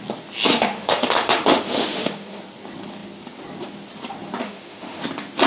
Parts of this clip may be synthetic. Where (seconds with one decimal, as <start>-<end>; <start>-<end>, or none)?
0.5-2.4; 4.4-5.0